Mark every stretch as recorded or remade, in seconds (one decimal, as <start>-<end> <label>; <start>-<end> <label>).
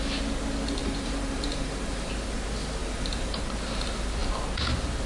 0.0-0.8 recorded; 0.8-2.1 remade; 2.1-2.8 recorded; 2.8-3.4 remade; 3.4-5.1 recorded